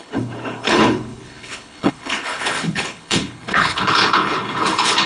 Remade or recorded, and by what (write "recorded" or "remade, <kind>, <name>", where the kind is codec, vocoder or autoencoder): remade, codec, HILCodec